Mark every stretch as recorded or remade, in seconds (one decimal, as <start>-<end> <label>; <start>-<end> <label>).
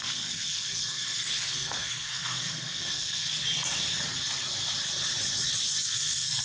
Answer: 0.0-3.3 remade; 3.3-5.8 recorded; 5.8-6.4 remade